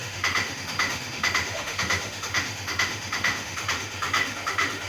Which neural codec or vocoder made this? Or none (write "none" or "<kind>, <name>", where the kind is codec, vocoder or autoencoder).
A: autoencoder, DAC-VAE